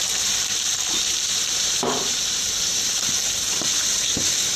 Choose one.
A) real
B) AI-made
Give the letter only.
B